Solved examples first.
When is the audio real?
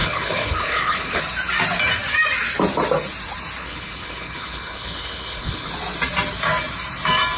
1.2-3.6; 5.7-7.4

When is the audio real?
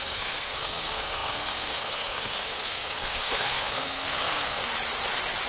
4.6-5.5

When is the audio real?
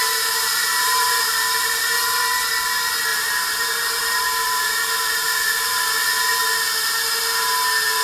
0.0-0.6; 2.2-3.1; 5.8-8.0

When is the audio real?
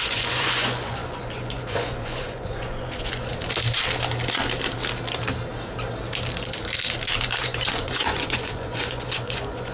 3.3-7.4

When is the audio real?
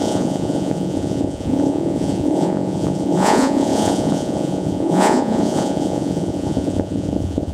none